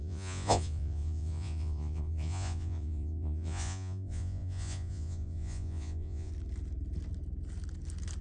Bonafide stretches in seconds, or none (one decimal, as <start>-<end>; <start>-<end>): 6.3-8.2